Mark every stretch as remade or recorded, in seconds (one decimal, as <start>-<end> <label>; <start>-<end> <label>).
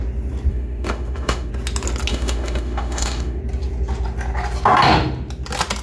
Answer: 0.0-0.5 recorded; 0.5-1.5 remade; 1.5-2.1 recorded; 2.1-3.4 remade; 3.4-5.8 recorded